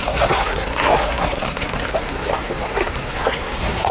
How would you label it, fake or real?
fake